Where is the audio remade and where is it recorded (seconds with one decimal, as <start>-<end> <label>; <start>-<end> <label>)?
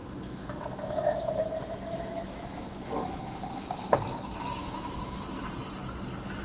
0.0-3.8 remade; 3.8-4.6 recorded; 4.6-5.2 remade; 5.2-6.4 recorded